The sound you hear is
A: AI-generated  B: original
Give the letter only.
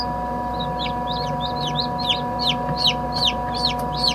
B